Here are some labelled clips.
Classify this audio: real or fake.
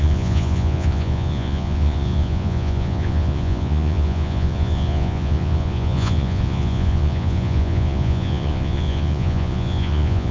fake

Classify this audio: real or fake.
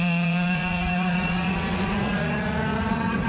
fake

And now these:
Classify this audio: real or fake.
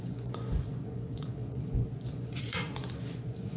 fake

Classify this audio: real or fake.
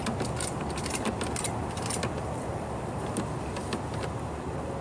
real